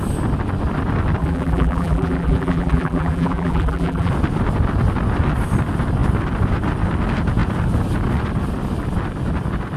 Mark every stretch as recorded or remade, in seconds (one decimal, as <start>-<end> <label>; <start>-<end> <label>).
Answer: 0.0-1.2 recorded; 1.2-4.1 remade; 4.1-9.8 recorded